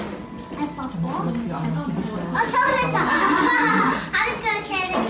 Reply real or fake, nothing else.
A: real